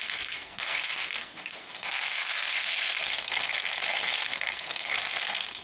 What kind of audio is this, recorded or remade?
remade